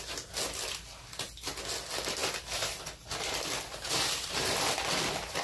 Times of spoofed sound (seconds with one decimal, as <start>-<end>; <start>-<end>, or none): 2.2-4.3